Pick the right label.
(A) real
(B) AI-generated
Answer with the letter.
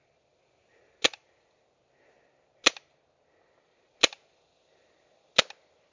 A